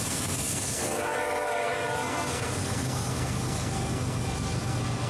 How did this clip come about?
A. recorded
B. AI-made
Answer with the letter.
B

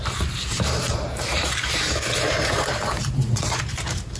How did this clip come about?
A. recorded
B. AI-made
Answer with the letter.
B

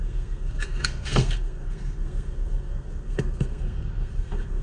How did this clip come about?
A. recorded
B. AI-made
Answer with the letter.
B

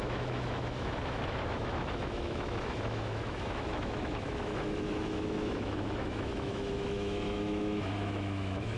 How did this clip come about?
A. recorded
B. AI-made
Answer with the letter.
B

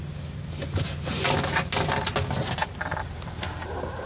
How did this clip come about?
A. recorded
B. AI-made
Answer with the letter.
A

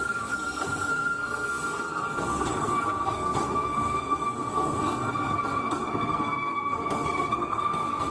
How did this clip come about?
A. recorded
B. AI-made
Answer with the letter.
B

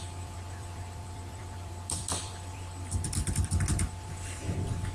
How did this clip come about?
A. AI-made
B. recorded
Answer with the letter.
A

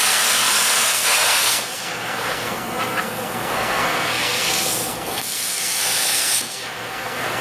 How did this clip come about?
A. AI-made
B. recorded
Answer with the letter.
A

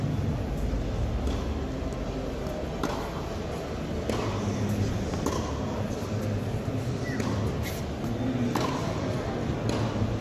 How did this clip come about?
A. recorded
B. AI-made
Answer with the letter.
A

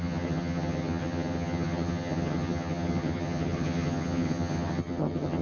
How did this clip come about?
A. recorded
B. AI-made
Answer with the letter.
B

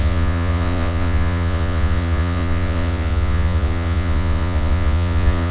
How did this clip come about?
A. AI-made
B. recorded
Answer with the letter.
A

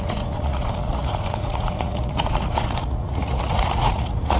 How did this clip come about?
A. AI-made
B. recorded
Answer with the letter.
A